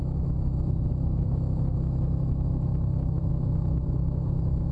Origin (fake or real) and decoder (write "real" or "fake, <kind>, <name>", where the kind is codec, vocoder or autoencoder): fake, autoencoder, DAC-VAE